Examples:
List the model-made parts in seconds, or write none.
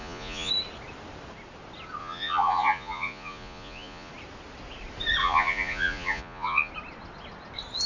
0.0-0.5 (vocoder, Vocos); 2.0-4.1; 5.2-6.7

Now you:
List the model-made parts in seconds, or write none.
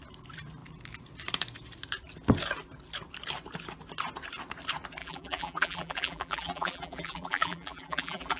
5.0-8.4 (vocoder, BigVGAN v2)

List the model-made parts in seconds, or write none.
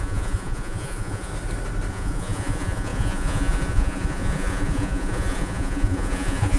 0.0-1.3 (vocoder, Vocos); 1.9-6.6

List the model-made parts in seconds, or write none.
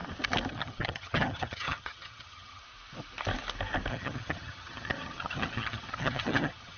0.5-2.6 (vocoder, HiFi-GAN); 3.9-6.8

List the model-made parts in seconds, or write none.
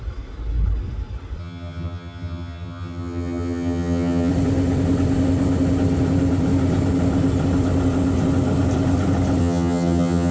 1.4-4.3 (vocoder, HiFi-GAN); 9.4-10.3